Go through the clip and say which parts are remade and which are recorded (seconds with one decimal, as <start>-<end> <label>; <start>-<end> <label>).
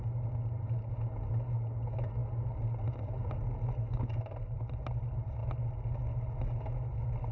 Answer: 0.0-7.3 recorded